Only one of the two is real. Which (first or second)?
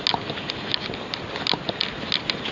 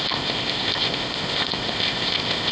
first